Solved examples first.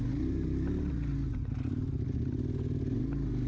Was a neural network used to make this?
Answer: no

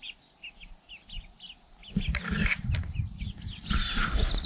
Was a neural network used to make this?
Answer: no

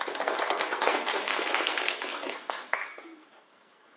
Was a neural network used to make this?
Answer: yes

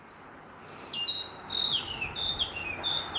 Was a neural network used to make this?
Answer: no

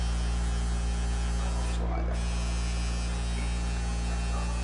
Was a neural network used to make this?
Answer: no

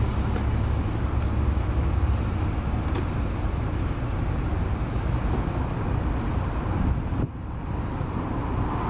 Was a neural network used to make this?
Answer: no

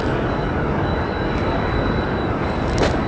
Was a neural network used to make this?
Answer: yes